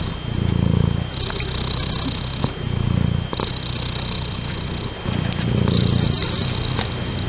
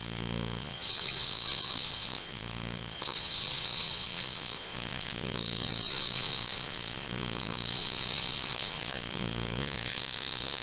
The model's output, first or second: second